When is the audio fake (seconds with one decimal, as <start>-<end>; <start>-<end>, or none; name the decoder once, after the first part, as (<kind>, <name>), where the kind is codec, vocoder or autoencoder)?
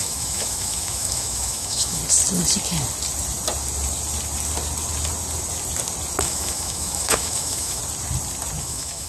0.0-2.0 (autoencoder, DAC-VAE); 6.2-7.8; 8.6-9.1